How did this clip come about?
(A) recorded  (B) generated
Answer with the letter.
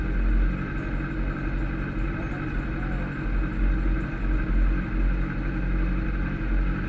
A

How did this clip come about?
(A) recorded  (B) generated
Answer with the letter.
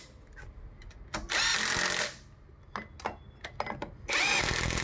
A